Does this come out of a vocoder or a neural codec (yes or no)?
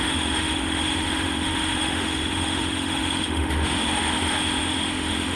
yes